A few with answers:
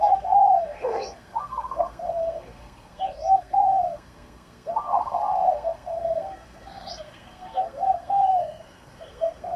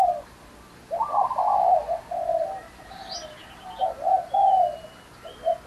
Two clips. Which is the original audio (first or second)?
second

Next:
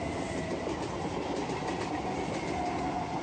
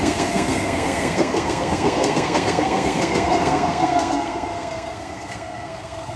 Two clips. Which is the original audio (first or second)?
first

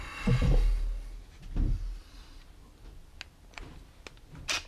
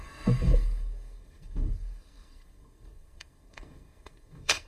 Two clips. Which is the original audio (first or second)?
first